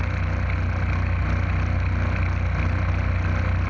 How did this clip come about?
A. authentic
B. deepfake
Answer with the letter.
A